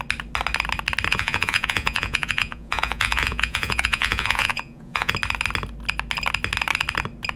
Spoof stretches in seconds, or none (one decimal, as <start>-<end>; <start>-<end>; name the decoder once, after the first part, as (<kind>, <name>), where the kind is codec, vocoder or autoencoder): 1.1-5.1 (vocoder, Vocos)